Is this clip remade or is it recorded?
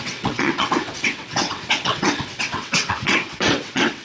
remade